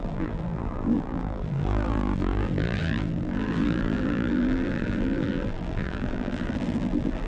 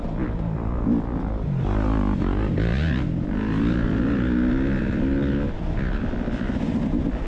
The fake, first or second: first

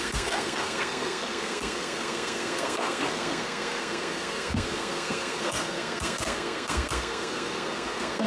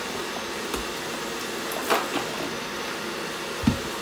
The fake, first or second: first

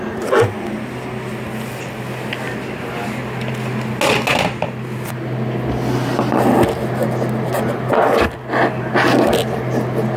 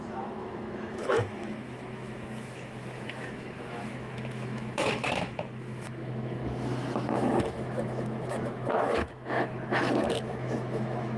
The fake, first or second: second